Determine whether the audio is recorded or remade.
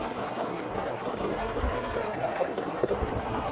remade